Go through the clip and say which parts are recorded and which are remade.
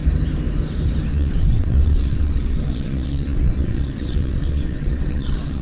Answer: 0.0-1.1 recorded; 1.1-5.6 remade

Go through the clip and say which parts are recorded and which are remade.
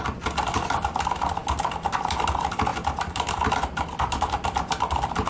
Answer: 0.0-1.4 remade; 1.4-2.1 recorded; 2.1-5.3 remade